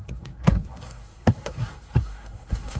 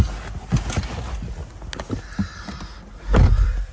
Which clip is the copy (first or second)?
first